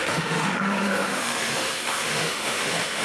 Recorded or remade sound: remade